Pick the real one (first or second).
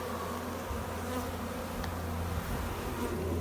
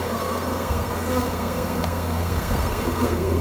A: first